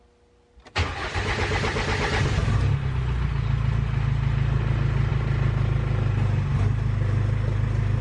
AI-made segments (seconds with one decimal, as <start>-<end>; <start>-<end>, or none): none